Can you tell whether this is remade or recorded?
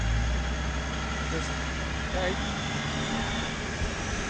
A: recorded